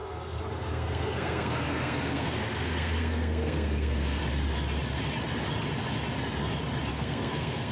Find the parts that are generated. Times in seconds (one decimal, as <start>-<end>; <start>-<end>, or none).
0.0-4.2; 6.9-7.7